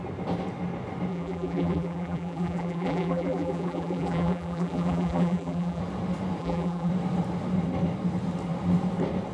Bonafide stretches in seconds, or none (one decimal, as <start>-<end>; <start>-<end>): 0.0-1.1; 5.8-6.4; 6.9-9.3